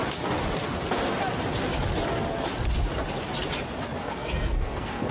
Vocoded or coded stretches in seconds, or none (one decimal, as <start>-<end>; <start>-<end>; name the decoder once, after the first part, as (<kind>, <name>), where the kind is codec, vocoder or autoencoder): 4.0-5.1 (codec, SNAC)